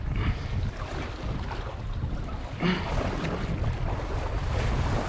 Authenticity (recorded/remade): recorded